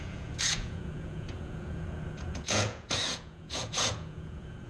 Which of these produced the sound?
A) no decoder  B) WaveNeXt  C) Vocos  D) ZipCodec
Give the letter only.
C